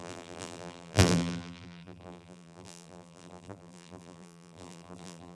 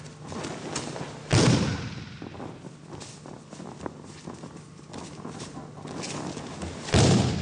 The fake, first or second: first